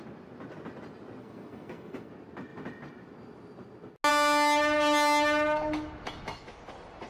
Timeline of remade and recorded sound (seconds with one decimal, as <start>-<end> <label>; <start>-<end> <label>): 0.0-1.2 recorded; 1.2-2.1 remade; 2.1-7.1 recorded

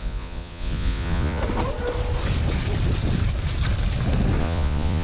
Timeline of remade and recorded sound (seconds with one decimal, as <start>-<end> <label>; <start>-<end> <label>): 0.0-1.4 remade; 1.4-4.4 recorded; 4.4-5.0 remade

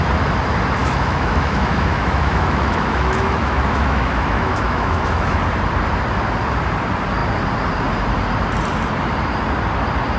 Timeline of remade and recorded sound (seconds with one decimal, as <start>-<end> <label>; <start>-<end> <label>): 0.0-0.8 recorded; 0.8-5.4 remade; 5.4-10.2 recorded

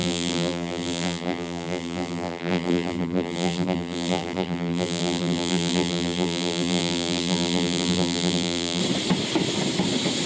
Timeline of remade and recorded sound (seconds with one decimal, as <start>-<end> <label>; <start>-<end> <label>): 0.0-8.8 remade; 8.8-10.3 recorded

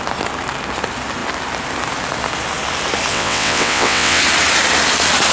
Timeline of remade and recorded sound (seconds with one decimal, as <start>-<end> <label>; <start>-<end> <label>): 0.0-3.1 recorded; 3.1-4.2 remade; 4.2-5.3 recorded

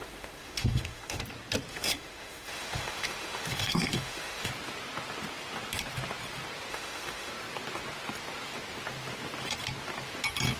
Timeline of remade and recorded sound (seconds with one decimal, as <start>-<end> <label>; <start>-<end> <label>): 0.0-1.2 remade; 1.2-1.7 recorded; 1.7-4.5 remade; 4.5-6.7 recorded; 6.7-7.3 remade; 7.3-10.6 recorded

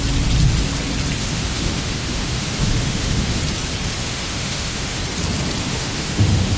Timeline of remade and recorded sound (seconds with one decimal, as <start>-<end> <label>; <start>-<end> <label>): 0.0-1.2 recorded; 1.2-3.4 remade; 3.4-4.0 recorded; 4.0-5.0 remade; 5.0-5.6 recorded; 5.6-6.6 remade

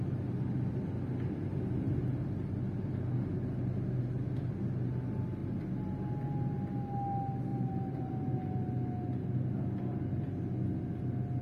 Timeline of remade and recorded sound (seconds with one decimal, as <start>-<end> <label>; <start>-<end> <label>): 0.0-7.5 recorded; 7.5-8.1 remade; 8.1-11.4 recorded